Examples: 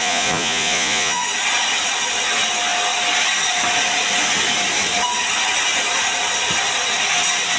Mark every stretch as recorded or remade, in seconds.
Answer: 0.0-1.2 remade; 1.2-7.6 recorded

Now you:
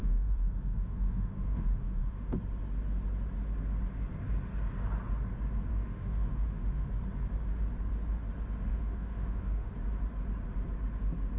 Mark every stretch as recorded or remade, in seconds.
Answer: 0.0-2.3 remade; 2.3-5.7 recorded; 5.7-6.9 remade; 6.9-8.7 recorded; 8.7-9.7 remade; 9.7-11.4 recorded

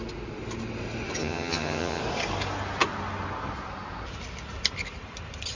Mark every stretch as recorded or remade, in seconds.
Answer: 0.0-1.2 recorded; 1.2-2.0 remade; 2.0-5.6 recorded

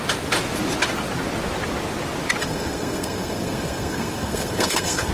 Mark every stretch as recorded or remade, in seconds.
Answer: 0.0-2.4 recorded; 2.4-5.1 remade